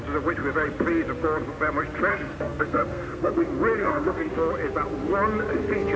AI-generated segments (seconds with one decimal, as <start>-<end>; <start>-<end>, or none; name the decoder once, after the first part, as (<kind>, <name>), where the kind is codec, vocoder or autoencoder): 2.1-3.3 (codec, SNAC); 3.8-4.3